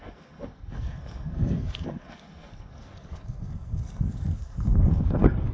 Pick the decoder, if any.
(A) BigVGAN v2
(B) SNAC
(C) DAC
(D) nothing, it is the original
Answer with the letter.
B